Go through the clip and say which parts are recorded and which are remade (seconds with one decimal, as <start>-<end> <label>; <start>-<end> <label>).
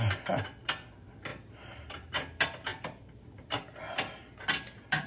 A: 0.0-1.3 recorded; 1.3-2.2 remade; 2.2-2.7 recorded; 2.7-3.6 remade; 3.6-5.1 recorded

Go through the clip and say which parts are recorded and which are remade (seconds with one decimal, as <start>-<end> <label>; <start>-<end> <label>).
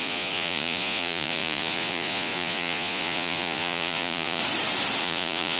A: 0.0-4.4 remade; 4.4-5.0 recorded; 5.0-5.6 remade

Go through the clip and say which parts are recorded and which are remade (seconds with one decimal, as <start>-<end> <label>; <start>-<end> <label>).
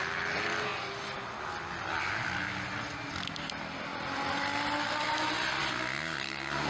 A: 0.0-6.7 recorded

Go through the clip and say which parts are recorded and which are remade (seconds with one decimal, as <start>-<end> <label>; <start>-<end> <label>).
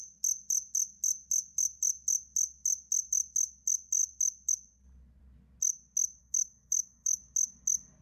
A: 0.0-6.2 recorded; 6.2-7.2 remade; 7.2-8.0 recorded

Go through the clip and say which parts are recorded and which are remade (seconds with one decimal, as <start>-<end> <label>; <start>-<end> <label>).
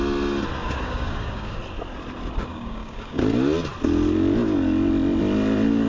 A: 0.0-0.6 recorded; 0.6-1.6 remade; 1.6-2.5 recorded; 2.5-3.2 remade; 3.2-5.9 recorded